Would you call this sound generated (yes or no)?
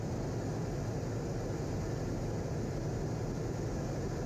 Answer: no